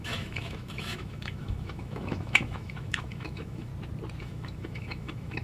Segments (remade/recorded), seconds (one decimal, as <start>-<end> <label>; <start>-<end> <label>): 0.0-3.7 remade; 3.7-4.2 recorded; 4.2-5.4 remade